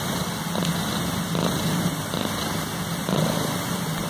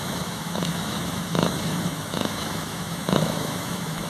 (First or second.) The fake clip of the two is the second